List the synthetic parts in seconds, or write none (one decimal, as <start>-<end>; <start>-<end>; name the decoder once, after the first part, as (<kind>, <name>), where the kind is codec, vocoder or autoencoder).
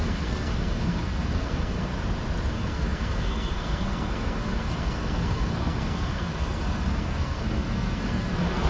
0.0-1.9 (codec, SNAC); 2.5-8.7